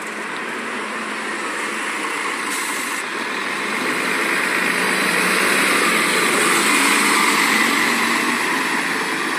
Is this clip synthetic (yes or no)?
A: no